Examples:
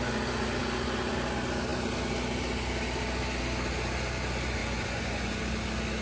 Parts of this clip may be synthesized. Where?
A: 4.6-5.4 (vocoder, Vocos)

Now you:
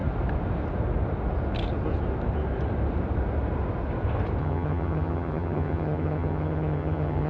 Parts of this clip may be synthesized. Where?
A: 4.4-7.3 (vocoder, HiFi-GAN)

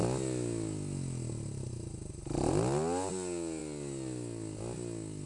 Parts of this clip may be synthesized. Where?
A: none

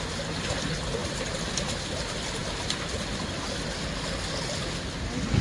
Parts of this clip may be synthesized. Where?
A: none